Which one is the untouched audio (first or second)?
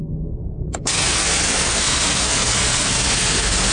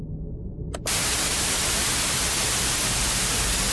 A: second